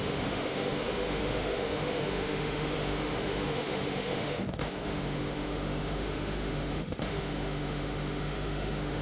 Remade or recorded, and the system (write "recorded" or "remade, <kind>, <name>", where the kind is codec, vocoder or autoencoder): remade, autoencoder, DAC-VAE